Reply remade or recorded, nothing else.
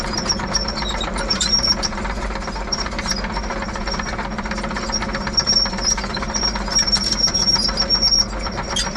recorded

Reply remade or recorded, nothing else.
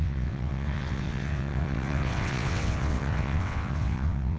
remade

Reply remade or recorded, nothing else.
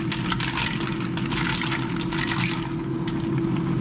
recorded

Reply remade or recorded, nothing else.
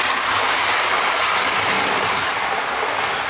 recorded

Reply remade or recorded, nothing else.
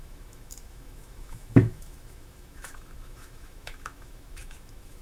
remade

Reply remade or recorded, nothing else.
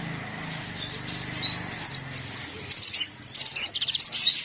recorded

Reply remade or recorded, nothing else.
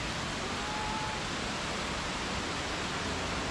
recorded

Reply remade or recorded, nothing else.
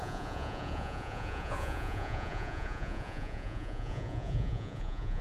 remade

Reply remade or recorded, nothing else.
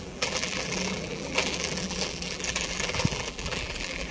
remade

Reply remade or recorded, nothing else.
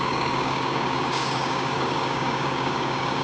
remade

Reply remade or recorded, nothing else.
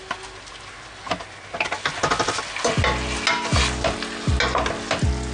recorded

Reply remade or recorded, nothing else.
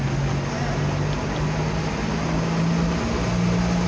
recorded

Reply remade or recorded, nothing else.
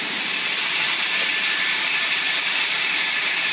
remade